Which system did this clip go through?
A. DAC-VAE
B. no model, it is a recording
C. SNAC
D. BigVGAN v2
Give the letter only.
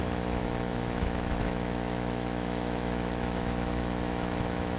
A